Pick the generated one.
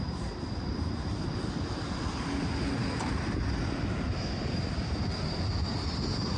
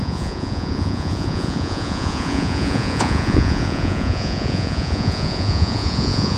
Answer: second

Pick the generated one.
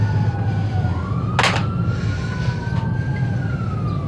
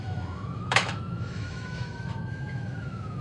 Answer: second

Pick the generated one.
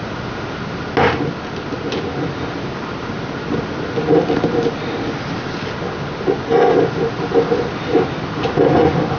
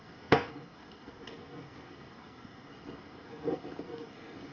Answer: second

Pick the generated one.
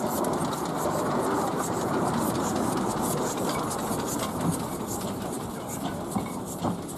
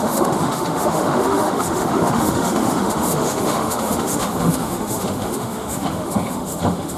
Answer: second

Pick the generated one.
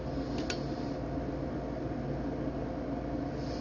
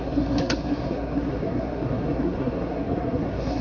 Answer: second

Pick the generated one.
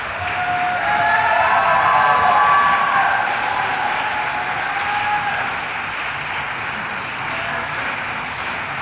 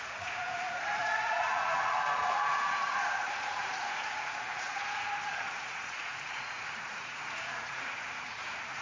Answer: second